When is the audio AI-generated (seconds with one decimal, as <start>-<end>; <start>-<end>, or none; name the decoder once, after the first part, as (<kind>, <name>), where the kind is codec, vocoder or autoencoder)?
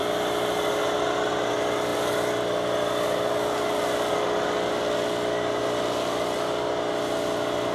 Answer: none